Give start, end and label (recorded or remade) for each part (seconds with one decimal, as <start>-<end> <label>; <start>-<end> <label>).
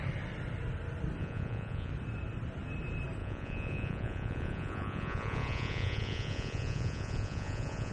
0.0-1.2 recorded; 1.2-1.9 remade; 1.9-3.2 recorded; 3.2-7.9 remade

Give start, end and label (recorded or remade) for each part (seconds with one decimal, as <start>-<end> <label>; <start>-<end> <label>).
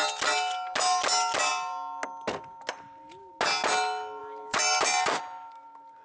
0.0-4.2 recorded; 4.2-5.2 remade; 5.2-6.0 recorded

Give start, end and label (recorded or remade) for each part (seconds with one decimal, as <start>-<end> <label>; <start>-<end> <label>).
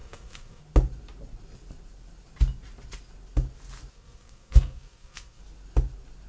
0.0-0.6 remade; 0.6-3.9 recorded; 3.9-5.4 remade; 5.4-6.3 recorded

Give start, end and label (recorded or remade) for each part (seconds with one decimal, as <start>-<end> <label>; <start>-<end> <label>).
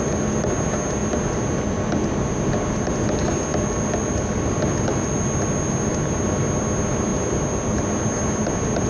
0.0-8.9 recorded